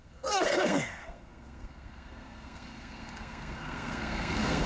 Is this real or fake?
fake